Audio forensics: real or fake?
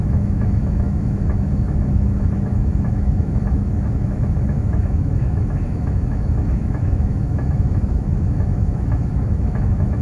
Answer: fake